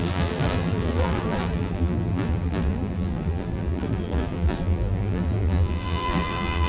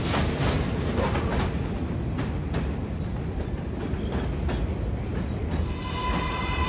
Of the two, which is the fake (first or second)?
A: first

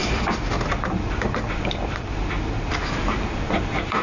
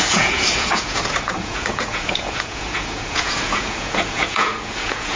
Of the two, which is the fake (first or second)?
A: second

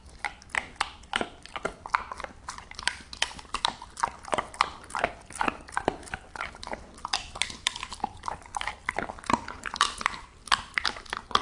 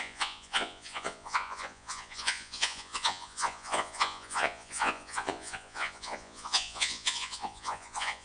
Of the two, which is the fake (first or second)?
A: second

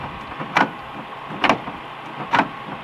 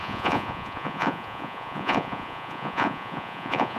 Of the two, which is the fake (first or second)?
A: second